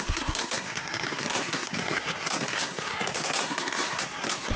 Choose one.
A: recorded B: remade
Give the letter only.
B